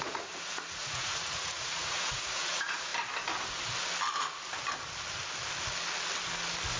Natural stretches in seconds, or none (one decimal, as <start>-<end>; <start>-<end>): 2.9-6.8

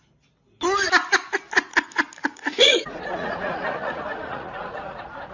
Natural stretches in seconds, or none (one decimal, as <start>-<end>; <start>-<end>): 0.0-2.2

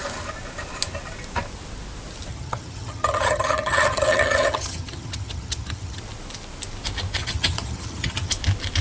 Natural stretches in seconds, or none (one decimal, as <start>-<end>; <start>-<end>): 0.0-2.3; 6.0-7.2; 8.3-8.8

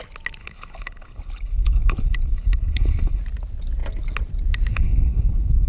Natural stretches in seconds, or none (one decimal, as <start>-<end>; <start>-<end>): 0.0-0.4; 3.2-4.7

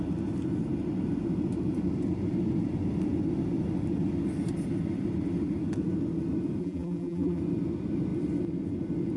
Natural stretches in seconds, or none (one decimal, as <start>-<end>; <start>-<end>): 0.0-6.6; 7.4-9.2

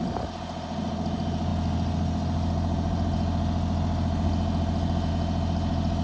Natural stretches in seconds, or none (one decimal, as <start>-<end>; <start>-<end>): 0.0-6.0

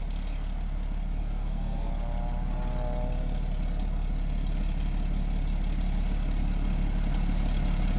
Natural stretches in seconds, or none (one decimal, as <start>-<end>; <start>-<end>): 0.0-1.2; 1.9-8.0